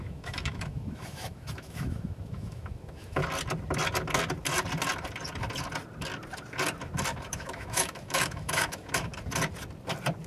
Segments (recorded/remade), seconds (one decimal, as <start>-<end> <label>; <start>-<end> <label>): 0.0-3.2 remade; 3.2-7.3 recorded; 7.3-9.1 remade; 9.1-10.3 recorded

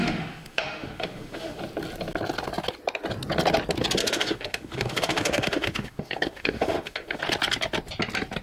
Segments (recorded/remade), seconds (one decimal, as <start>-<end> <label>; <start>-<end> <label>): 0.0-1.6 remade; 1.6-4.0 recorded; 4.0-7.2 remade; 7.2-8.4 recorded

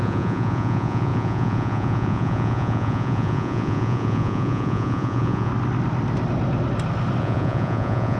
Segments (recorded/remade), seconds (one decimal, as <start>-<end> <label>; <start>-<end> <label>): 0.0-5.5 remade; 5.5-7.2 recorded; 7.2-8.2 remade